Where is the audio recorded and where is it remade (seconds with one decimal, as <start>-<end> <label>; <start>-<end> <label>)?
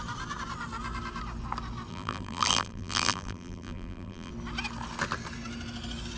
0.0-1.9 recorded; 1.9-4.3 remade; 4.3-6.2 recorded